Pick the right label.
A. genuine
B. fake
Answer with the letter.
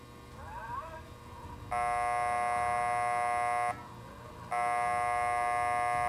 A